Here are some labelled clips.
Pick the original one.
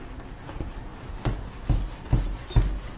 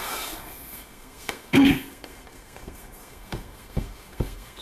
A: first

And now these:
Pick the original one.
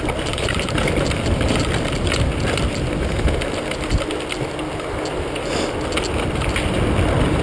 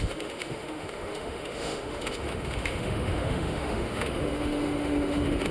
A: first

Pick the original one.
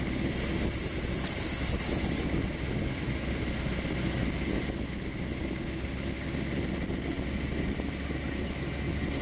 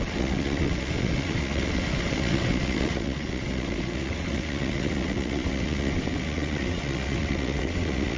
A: first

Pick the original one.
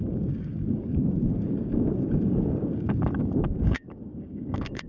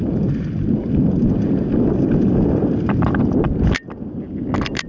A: second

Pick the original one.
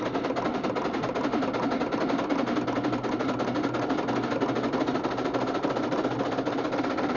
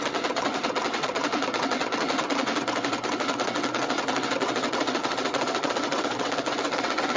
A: first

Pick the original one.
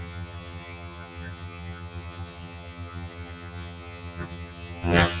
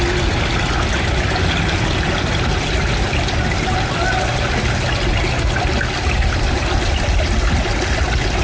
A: second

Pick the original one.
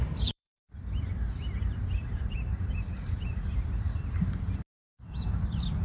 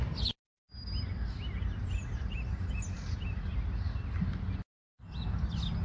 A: second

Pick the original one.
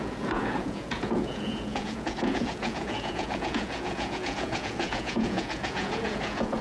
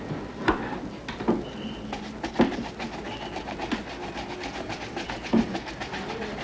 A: second